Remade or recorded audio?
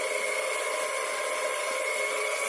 recorded